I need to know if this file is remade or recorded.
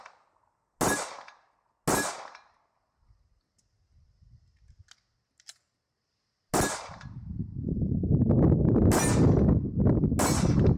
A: recorded